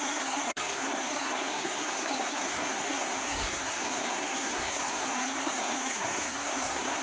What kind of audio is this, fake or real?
fake